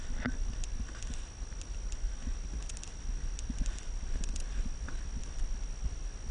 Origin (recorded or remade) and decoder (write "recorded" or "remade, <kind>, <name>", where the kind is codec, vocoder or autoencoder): recorded